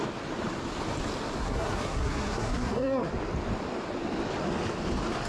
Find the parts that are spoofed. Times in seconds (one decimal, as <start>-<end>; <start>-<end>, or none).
1.4-3.1